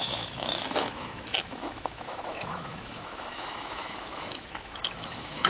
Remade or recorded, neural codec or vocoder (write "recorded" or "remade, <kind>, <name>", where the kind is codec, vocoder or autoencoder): remade, autoencoder, DAC-VAE